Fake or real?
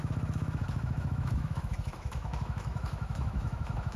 fake